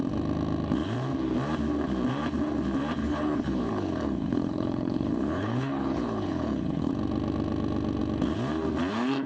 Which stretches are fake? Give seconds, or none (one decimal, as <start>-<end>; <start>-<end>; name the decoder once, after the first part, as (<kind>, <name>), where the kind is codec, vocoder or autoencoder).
3.0-6.9 (codec, HILCodec)